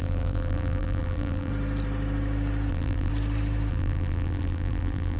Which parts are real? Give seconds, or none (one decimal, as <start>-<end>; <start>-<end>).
1.5-2.7; 3.1-3.7